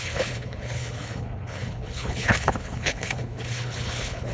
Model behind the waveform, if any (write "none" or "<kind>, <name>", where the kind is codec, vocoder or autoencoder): codec, HILCodec